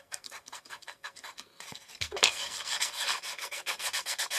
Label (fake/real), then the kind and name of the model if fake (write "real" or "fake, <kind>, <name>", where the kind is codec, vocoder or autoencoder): fake, codec, SNAC